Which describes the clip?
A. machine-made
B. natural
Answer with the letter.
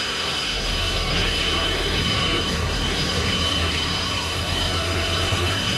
A